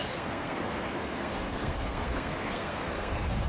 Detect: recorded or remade remade